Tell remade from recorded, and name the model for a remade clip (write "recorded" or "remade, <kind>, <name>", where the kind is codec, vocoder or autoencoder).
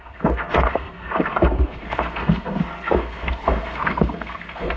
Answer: remade, codec, SNAC